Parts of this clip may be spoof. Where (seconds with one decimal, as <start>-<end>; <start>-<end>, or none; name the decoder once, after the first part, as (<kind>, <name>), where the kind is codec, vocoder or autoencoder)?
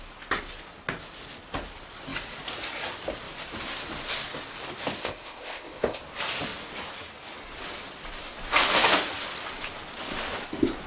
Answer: 5.0-6.0 (codec, ZipCodec)